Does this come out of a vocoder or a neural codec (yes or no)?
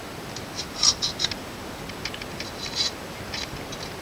no